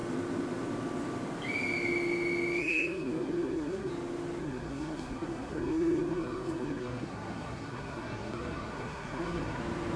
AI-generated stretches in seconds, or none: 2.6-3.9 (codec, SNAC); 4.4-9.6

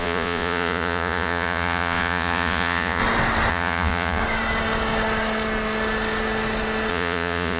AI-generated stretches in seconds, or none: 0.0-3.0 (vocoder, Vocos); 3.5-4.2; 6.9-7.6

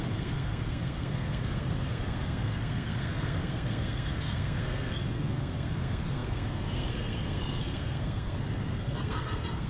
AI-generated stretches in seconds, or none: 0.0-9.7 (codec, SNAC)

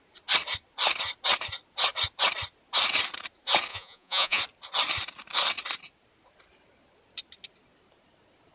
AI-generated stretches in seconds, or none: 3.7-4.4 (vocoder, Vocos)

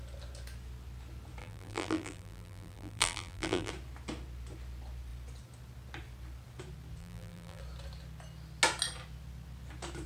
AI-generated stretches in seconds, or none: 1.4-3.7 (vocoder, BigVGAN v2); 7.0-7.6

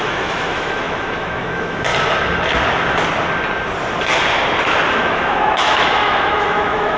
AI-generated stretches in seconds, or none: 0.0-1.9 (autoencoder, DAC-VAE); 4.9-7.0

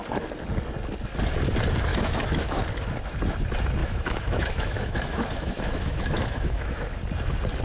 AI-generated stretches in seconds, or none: 1.9-2.6 (autoencoder, DAC-VAE); 3.8-6.8

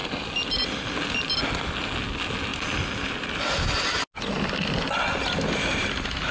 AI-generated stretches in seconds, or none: 0.0-1.4 (vocoder, BigVGAN v2); 2.5-3.8